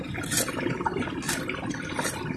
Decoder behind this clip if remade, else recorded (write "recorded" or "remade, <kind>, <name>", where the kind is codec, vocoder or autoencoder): recorded